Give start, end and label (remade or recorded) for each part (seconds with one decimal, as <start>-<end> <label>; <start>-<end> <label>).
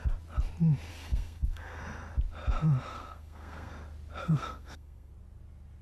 0.0-0.9 recorded; 0.9-1.8 remade; 1.8-2.9 recorded; 2.9-3.7 remade; 3.7-4.2 recorded; 4.2-5.1 remade; 5.1-5.8 recorded